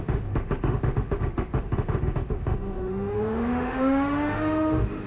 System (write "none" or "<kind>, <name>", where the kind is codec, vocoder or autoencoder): autoencoder, DAC-VAE